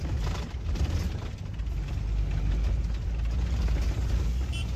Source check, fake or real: real